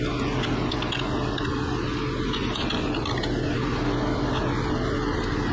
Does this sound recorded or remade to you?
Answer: recorded